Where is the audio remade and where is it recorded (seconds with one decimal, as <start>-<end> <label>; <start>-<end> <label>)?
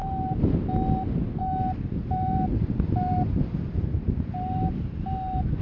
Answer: 0.0-5.6 recorded